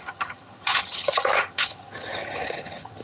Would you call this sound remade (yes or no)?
yes